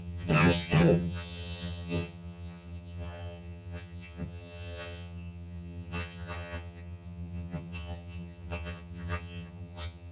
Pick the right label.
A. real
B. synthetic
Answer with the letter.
B